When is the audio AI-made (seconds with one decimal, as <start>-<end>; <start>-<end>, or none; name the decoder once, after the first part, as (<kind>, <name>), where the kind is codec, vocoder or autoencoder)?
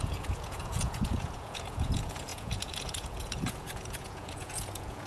0.0-5.1 (vocoder, Vocos)